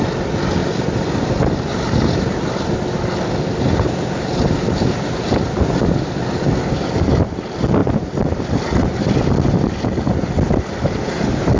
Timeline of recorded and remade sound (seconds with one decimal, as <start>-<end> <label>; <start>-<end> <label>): 0.0-11.6 recorded